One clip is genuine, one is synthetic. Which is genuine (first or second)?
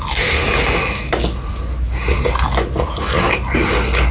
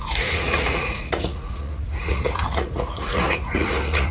first